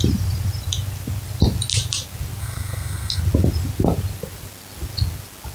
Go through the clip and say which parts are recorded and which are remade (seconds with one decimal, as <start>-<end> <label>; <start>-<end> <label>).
0.0-2.4 recorded; 2.4-3.2 remade; 3.2-5.5 recorded